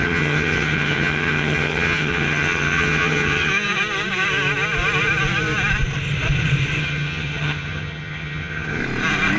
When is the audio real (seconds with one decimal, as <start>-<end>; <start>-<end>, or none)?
3.5-6.8; 8.8-9.4